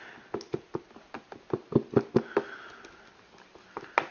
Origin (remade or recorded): recorded